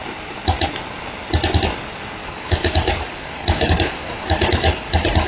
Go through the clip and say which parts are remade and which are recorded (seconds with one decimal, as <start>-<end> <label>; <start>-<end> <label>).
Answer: 0.0-2.2 recorded; 2.2-5.3 remade